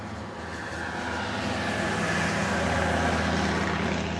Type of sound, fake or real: real